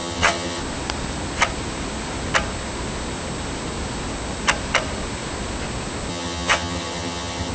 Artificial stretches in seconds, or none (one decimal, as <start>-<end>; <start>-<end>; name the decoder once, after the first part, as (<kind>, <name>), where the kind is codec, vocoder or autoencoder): 0.0-0.6 (vocoder, HiFi-GAN); 6.1-7.5